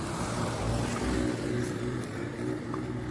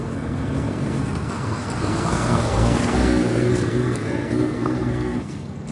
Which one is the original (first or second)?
first